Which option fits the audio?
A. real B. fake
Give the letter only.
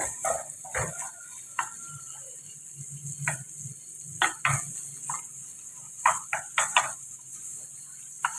A